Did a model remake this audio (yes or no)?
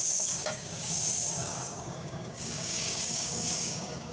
yes